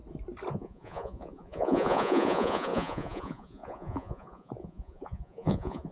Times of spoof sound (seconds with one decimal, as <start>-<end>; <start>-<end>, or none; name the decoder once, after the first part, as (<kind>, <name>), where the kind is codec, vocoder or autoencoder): 0.5-5.9 (vocoder, Vocos)